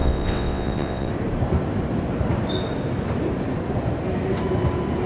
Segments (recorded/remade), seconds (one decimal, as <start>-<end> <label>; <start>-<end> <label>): 0.0-1.1 remade; 1.1-5.1 recorded